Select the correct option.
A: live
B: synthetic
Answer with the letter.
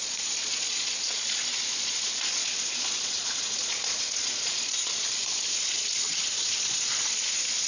B